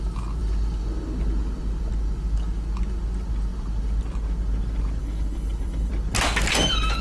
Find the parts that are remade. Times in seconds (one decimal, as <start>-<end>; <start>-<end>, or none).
5.0-5.9